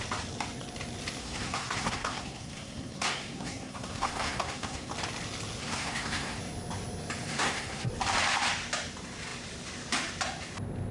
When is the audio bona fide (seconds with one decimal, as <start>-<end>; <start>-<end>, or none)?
0.0-1.2; 4.9-5.6; 6.4-7.3; 7.9-10.9